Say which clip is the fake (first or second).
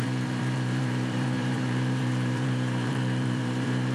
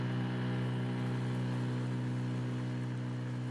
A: first